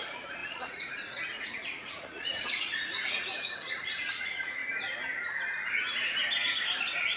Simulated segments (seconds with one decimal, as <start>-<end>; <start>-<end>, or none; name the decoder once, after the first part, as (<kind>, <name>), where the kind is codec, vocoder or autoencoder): 0.0-4.6 (vocoder, Vocos); 6.8-7.2